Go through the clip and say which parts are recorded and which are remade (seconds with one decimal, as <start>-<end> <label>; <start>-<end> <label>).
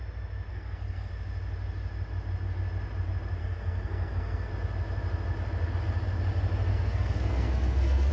0.0-0.5 recorded; 0.5-1.1 remade; 1.1-3.4 recorded; 3.4-4.5 remade; 4.5-6.7 recorded; 6.7-8.1 remade